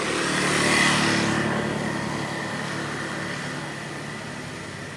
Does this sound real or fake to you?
real